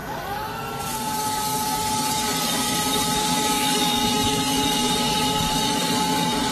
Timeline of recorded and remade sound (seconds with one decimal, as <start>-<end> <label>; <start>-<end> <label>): 0.0-6.5 remade